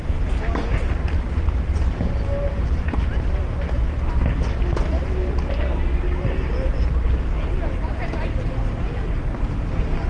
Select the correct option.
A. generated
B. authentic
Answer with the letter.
B